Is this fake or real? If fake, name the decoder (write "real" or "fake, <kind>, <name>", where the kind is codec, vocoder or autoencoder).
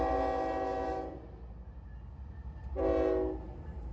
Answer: real